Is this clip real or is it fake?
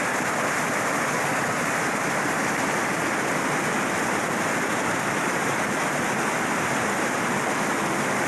real